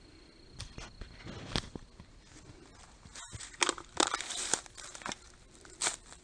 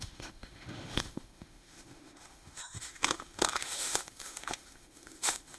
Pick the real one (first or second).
first